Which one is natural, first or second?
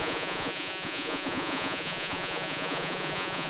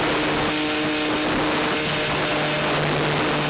second